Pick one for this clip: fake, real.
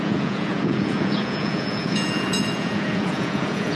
fake